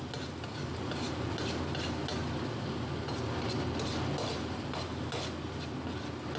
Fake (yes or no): no